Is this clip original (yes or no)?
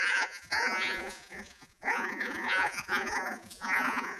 no